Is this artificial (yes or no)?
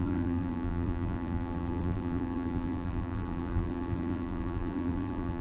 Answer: yes